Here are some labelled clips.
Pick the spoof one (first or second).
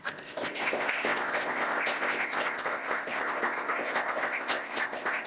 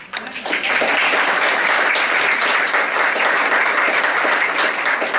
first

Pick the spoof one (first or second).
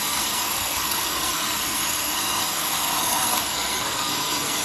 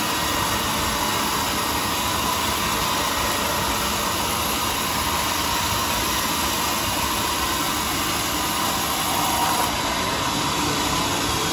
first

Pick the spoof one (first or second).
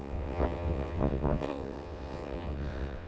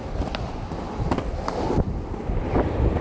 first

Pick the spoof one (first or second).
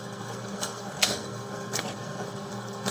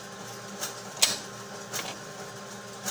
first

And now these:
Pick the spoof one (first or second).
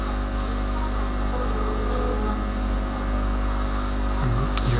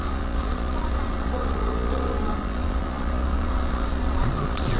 second